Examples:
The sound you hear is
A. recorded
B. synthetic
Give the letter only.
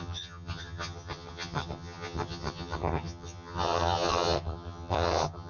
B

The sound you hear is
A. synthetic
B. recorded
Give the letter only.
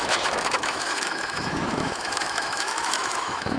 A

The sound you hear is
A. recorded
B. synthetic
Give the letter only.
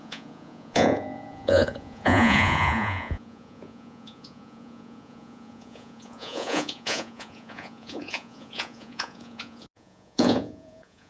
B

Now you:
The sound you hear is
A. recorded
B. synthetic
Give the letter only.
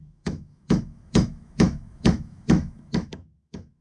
B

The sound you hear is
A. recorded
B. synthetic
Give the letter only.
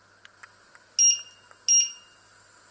A